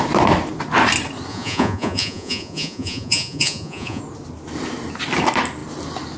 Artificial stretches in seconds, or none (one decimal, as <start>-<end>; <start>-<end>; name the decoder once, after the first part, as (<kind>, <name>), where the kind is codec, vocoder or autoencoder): 1.3-4.0 (vocoder, Vocos)